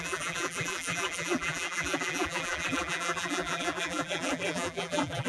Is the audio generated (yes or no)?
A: yes